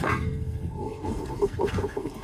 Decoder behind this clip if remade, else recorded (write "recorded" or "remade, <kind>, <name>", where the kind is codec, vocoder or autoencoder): remade, codec, SNAC